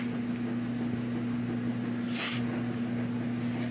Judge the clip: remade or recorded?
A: recorded